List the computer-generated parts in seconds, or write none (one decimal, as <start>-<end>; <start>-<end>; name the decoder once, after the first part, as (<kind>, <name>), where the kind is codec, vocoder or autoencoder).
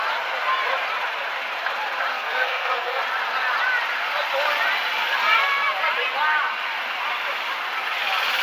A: 2.1-3.0 (codec, SNAC)